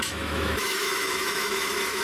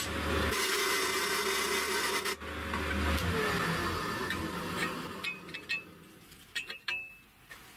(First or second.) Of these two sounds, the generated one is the first